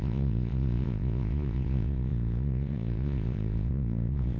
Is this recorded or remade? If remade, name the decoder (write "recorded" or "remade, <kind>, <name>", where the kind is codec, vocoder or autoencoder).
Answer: remade, vocoder, Vocos